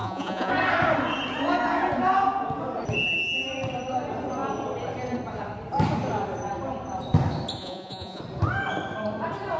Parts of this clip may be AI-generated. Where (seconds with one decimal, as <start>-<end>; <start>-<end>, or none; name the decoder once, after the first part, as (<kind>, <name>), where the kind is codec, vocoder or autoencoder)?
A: 0.0-0.5 (vocoder, Vocos); 7.6-8.2